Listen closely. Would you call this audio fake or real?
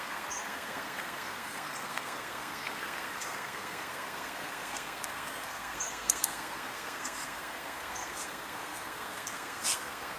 fake